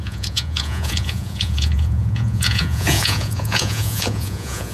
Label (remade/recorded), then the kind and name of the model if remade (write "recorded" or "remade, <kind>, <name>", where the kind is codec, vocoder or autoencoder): remade, vocoder, Vocos